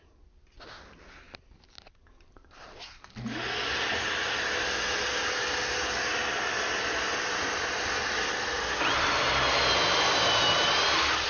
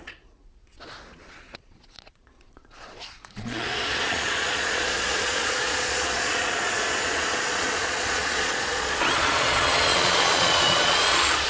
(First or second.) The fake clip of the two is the second